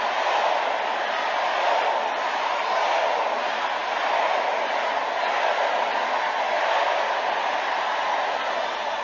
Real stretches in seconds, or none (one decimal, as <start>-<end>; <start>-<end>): 0.0-9.0